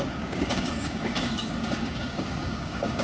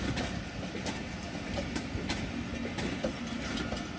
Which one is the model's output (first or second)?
first